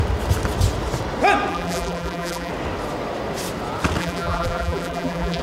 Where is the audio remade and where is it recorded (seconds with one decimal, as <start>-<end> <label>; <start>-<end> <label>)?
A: 0.0-1.5 recorded; 1.5-2.5 remade; 2.5-4.0 recorded; 4.0-5.4 remade